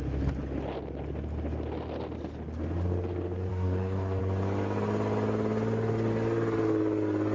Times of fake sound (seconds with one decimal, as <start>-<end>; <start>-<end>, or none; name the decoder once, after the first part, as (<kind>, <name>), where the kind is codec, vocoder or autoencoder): 3.5-4.2 (codec, DAC)